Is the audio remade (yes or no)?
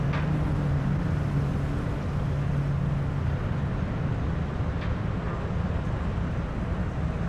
no